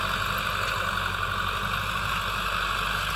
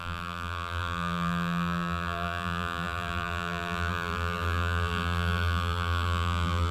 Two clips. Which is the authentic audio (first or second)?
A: first